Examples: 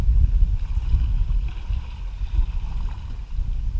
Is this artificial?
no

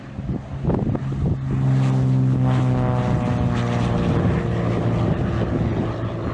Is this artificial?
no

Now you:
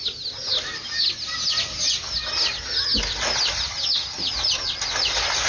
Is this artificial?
no